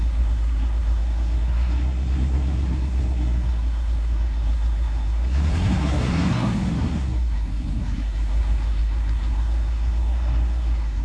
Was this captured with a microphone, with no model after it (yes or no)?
no